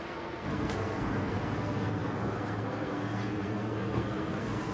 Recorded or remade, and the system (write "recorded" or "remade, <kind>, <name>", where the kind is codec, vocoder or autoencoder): remade, codec, SNAC